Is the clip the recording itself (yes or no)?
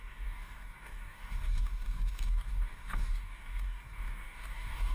no